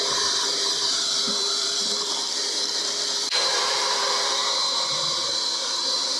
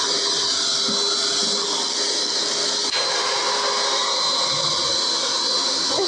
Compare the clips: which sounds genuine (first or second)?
second